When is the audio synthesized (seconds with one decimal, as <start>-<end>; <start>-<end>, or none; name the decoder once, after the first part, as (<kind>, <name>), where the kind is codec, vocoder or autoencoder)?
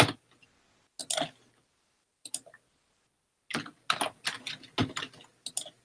1.0-3.0 (vocoder, BigVGAN v2)